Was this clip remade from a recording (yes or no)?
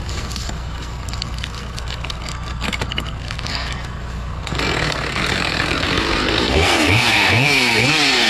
yes